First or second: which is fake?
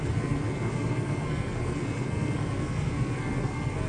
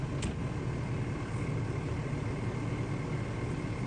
first